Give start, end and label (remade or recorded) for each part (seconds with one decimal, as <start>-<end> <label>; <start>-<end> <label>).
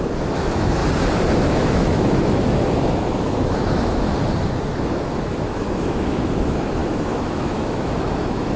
0.0-0.8 remade; 0.8-1.4 recorded; 1.4-4.1 remade; 4.1-4.7 recorded; 4.7-8.6 remade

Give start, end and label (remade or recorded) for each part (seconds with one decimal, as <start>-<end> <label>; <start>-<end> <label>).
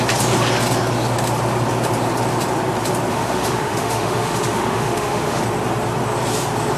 0.0-3.1 recorded; 3.1-5.4 remade; 5.4-6.8 recorded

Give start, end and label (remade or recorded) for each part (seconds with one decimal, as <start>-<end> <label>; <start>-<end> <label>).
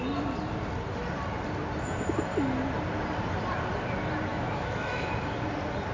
0.0-4.3 recorded; 4.3-5.1 remade; 5.1-5.9 recorded